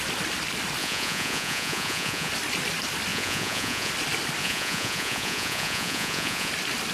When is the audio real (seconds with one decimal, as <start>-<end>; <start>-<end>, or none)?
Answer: 0.0-0.8; 2.3-3.1; 3.9-4.4; 6.5-6.9